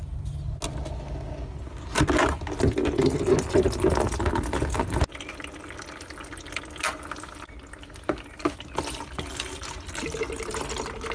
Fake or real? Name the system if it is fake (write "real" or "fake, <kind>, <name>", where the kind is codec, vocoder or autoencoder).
real